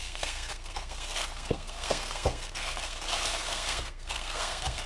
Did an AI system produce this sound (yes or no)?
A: yes